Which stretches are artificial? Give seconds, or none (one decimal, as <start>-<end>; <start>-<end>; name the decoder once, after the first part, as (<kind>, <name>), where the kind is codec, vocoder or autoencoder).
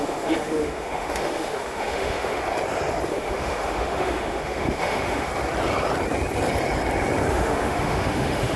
0.0-2.4 (autoencoder, DAC-VAE); 3.1-5.3; 7.3-8.6